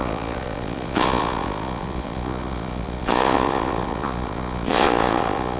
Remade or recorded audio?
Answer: remade